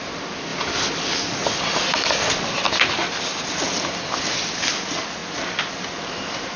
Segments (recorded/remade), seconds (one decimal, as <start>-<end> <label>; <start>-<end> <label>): 0.0-6.6 recorded